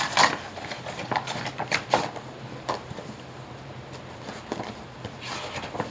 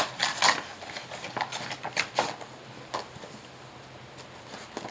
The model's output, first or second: first